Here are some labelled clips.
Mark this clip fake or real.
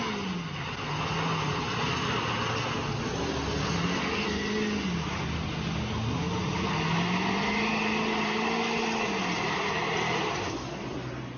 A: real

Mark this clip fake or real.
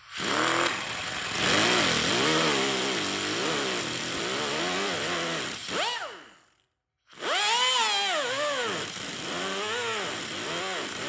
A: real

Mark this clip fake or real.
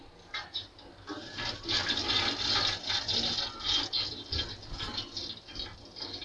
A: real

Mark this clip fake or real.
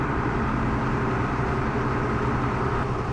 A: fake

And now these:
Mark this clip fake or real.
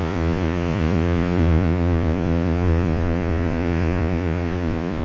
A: fake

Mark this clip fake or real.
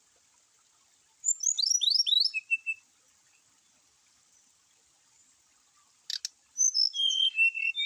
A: real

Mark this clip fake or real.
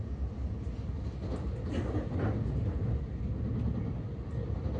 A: real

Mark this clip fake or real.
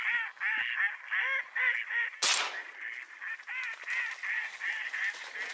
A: real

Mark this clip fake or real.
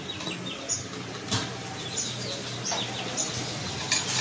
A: real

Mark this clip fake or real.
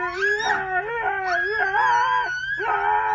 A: real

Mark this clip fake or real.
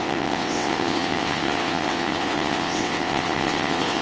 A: fake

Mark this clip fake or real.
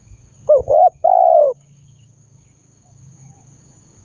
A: fake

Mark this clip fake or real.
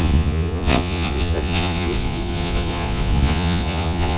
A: fake